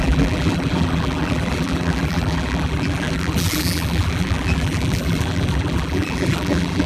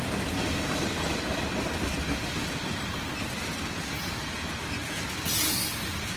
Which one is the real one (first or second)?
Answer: second